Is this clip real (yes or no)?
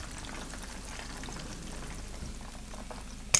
yes